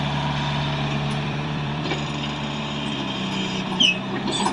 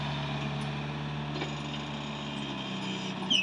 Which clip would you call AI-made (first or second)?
first